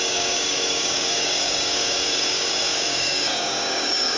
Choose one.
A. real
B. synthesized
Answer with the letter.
B